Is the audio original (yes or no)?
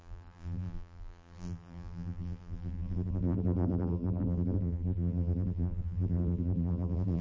no